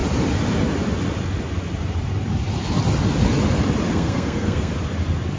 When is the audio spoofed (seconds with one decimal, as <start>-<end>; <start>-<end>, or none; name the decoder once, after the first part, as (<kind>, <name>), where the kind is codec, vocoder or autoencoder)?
3.9-4.7 (codec, SNAC)